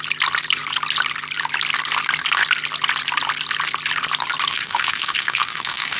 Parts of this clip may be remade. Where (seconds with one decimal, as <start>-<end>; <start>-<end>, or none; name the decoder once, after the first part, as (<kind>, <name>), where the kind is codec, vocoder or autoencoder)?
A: 4.5-6.0 (autoencoder, DAC-VAE)